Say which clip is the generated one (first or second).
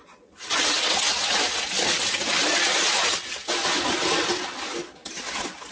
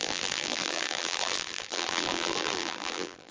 second